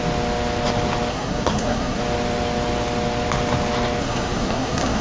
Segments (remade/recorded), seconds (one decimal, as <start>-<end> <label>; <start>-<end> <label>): 0.0-1.1 recorded; 1.1-2.0 remade; 2.0-4.0 recorded; 4.0-5.0 remade